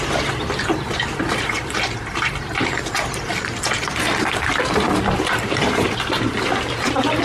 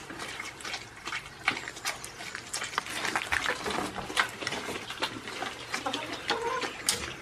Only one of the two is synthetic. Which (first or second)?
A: first